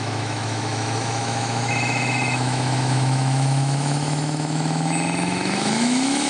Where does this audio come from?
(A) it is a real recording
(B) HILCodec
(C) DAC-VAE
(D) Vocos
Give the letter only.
C